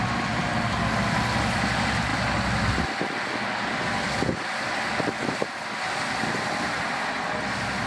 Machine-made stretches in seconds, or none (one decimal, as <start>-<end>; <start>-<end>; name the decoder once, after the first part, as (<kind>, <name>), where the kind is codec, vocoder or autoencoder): none